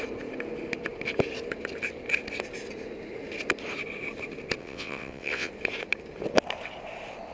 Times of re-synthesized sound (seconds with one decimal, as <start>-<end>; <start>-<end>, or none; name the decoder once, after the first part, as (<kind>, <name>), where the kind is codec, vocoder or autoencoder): 4.6-5.5 (vocoder, WaveNeXt)